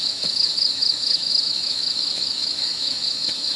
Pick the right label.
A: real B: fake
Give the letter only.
B